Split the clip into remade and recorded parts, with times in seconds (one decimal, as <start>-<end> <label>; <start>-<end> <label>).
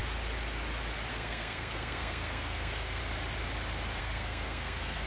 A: 0.0-1.1 recorded; 1.1-3.0 remade; 3.0-4.0 recorded; 4.0-5.1 remade